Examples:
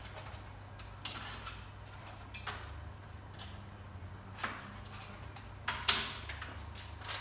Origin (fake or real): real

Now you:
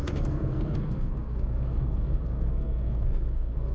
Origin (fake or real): fake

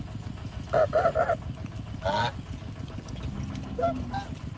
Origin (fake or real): real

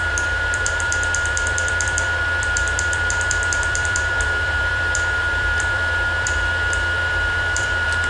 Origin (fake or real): fake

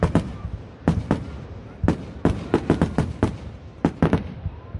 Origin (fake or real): fake